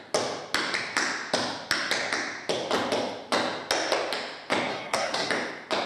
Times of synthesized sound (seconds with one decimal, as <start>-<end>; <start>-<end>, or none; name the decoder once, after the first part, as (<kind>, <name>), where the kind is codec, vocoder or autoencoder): 4.7-5.3 (codec, SNAC)

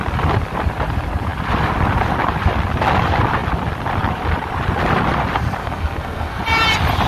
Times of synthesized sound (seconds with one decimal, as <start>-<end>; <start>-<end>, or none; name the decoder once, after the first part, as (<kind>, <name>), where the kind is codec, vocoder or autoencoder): 5.6-6.4 (codec, SNAC)

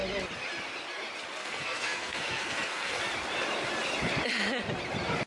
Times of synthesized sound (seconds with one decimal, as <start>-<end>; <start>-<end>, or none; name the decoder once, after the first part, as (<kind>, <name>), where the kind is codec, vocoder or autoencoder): 1.4-3.0 (codec, SNAC)

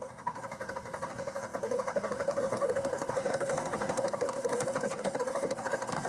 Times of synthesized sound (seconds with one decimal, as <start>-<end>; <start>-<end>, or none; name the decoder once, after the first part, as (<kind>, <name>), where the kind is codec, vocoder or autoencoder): 0.0-6.1 (codec, SNAC)

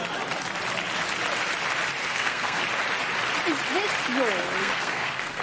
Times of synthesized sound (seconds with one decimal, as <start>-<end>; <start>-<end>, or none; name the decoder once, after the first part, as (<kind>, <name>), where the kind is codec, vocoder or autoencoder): 2.0-2.6 (codec, SNAC); 4.6-5.4

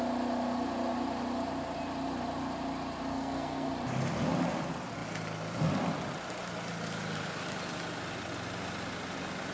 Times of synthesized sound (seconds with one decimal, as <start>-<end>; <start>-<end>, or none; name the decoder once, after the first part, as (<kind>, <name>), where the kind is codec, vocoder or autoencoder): 3.1-3.7 (codec, SNAC)

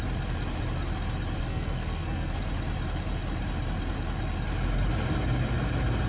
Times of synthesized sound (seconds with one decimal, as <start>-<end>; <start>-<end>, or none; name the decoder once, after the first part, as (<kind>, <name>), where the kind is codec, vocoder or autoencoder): 1.4-2.4 (codec, SNAC)